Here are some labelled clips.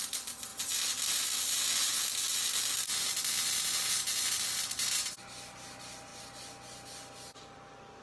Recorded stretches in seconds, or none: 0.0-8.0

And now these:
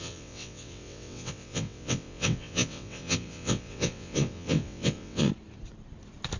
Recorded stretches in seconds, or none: 5.3-6.4

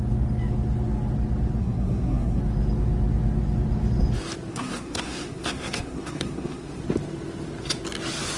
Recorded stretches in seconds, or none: 0.0-1.6; 2.4-4.5; 6.8-8.4

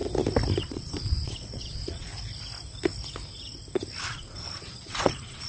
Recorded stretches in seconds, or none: 0.0-0.6; 2.1-4.0

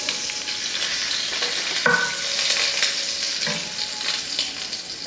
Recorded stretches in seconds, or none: 0.0-5.1

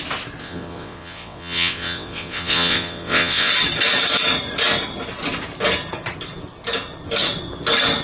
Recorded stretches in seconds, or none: 0.0-0.4; 3.5-8.0

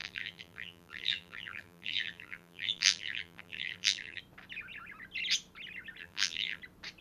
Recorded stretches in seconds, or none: 4.2-6.0; 6.6-7.0

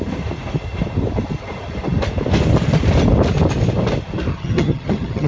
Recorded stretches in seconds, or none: 0.0-4.3